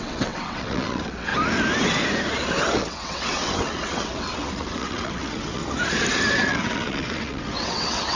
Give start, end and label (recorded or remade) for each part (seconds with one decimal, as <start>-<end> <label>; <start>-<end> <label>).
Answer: 0.0-1.3 remade; 1.3-2.6 recorded; 2.6-5.6 remade; 5.6-6.3 recorded; 6.3-8.2 remade